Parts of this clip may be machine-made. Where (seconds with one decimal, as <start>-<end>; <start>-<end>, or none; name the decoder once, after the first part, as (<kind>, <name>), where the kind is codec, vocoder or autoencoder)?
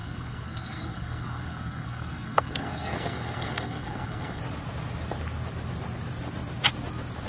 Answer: 0.0-4.4 (codec, SNAC)